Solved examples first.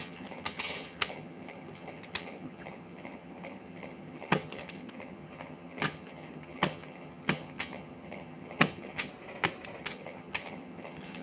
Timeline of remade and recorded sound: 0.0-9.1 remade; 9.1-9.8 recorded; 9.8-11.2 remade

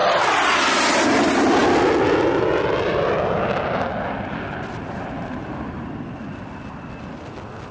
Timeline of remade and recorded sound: 0.0-7.7 recorded

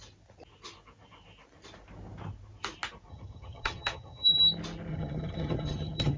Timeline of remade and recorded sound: 0.0-3.1 recorded; 3.1-4.4 remade; 4.4-4.9 recorded; 4.9-6.2 remade

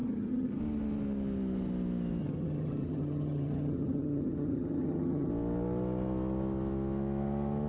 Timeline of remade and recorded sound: 0.0-0.6 remade; 0.6-2.2 recorded; 2.2-5.3 remade; 5.3-7.7 recorded

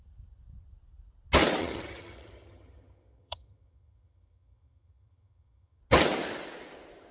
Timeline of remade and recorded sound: 0.0-1.6 recorded; 1.6-5.8 remade; 5.8-7.1 recorded

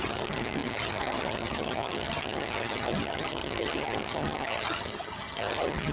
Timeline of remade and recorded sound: 0.0-5.9 remade

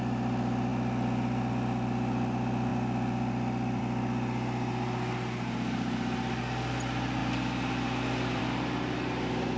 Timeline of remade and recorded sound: 0.0-9.6 recorded